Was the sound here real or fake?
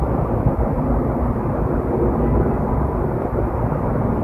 real